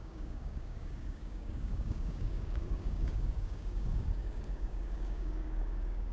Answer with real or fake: fake